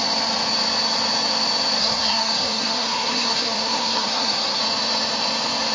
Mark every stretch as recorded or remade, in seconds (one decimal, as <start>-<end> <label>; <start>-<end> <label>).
0.0-1.8 recorded; 1.8-4.6 remade; 4.6-5.7 recorded